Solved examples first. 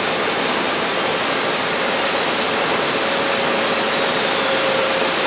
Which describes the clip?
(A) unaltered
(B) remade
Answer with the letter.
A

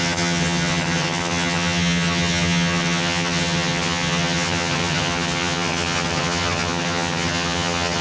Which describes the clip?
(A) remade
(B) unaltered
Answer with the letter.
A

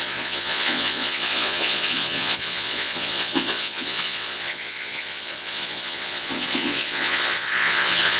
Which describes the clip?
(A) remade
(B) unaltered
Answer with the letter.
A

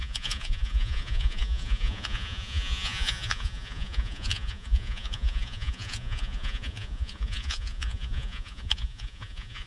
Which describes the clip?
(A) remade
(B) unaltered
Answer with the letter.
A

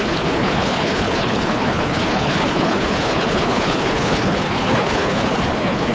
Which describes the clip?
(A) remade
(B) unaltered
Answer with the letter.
A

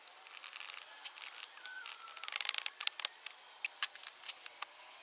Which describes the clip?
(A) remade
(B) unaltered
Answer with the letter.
B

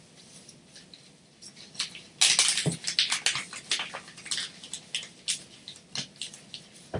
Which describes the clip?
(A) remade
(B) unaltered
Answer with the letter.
B